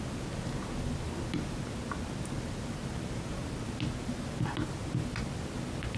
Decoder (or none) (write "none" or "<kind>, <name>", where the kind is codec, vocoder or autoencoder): none